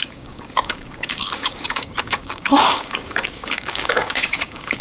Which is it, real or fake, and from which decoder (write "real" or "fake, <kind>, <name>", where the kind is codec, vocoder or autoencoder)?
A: fake, codec, DAC